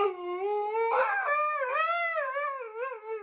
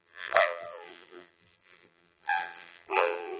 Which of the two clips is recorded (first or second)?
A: first